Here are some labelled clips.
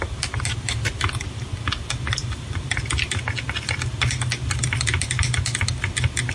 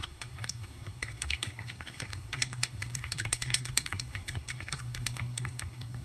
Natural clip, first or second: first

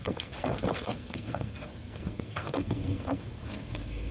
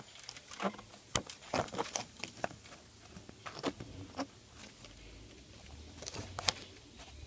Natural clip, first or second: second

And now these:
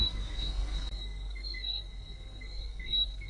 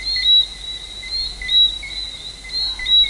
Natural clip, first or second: second